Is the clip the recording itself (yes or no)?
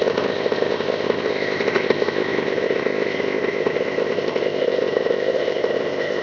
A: no